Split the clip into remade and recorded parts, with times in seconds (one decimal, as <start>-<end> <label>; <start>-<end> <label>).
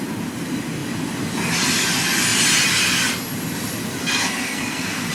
0.0-4.0 recorded; 4.0-5.1 remade